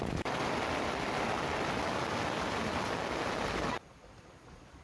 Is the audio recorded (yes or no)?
yes